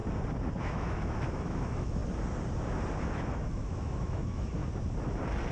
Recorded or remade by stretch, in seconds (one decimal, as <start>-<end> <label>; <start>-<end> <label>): 0.0-0.6 recorded; 0.6-2.0 remade; 2.0-3.0 recorded; 3.0-4.6 remade; 4.6-5.5 recorded